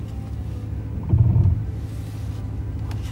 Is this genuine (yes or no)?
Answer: yes